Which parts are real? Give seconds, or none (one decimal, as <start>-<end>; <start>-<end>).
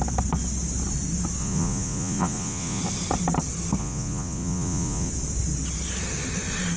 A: 0.0-1.4; 2.8-3.8; 5.1-6.8